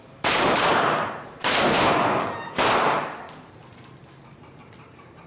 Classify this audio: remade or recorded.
remade